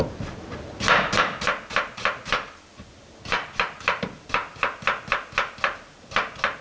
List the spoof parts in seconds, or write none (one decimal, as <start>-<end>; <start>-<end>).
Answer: none